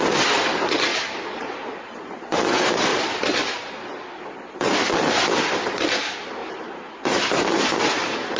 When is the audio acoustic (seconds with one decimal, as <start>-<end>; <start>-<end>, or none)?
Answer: 0.0-0.9; 2.4-2.9; 4.0-6.4; 7.0-8.4